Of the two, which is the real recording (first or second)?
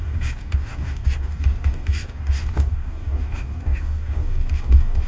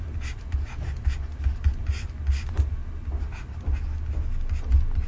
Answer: second